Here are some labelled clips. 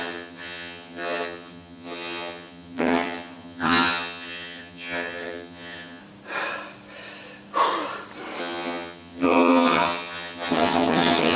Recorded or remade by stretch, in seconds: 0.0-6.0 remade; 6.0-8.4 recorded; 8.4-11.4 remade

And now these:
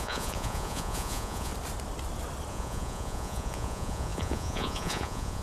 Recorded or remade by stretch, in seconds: 0.0-1.5 remade; 1.5-2.5 recorded; 2.5-5.4 remade